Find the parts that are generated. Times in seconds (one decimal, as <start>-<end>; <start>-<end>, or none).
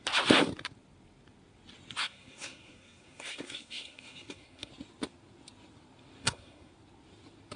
2.0-4.7; 6.2-6.7